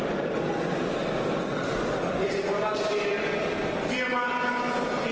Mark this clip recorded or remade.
recorded